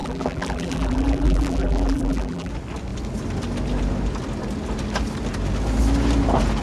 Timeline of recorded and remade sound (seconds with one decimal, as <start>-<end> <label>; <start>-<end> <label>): 0.0-2.5 remade; 2.5-6.6 recorded